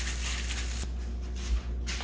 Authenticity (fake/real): real